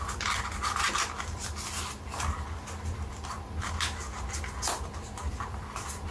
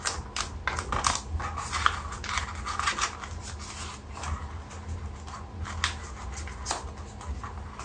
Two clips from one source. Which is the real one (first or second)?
second